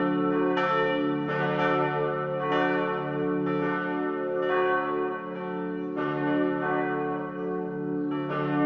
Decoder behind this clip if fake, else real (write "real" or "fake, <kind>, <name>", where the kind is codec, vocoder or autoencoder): real